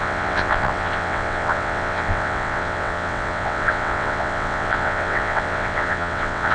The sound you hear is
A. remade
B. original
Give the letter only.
A